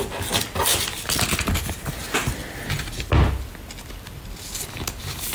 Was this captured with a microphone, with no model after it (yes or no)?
yes